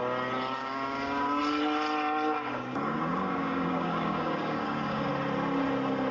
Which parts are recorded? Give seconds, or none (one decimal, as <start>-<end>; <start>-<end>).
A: 0.0-0.6; 1.4-2.7; 5.1-6.1